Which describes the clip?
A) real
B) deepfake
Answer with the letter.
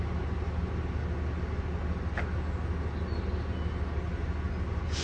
A